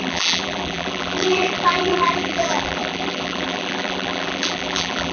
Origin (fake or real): fake